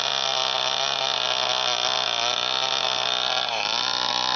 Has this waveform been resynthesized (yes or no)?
no